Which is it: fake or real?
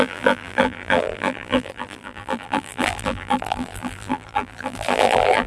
fake